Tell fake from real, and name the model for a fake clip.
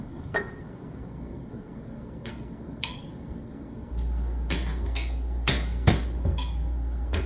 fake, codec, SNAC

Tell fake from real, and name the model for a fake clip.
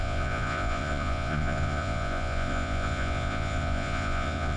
fake, vocoder, Vocos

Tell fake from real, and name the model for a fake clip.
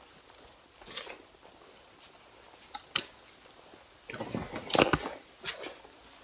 real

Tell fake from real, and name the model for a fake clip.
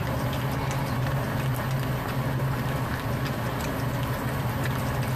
real